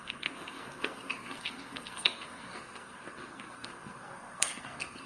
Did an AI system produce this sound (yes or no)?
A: yes